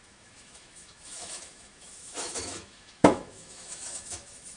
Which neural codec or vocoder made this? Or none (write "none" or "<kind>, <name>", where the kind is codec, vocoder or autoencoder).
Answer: autoencoder, DAC-VAE